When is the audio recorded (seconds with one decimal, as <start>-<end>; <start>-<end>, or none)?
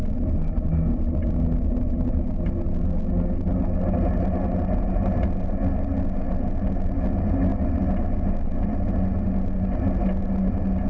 0.0-10.9